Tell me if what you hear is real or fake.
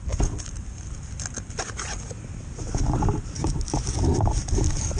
fake